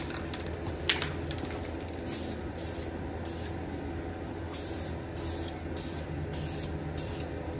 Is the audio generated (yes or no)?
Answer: no